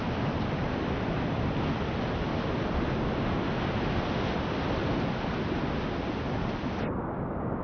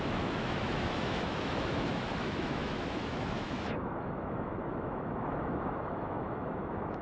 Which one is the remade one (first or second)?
second